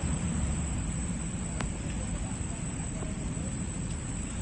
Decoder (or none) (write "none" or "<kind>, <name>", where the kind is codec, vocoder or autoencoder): vocoder, BigVGAN v2